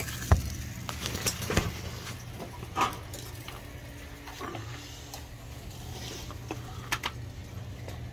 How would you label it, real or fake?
real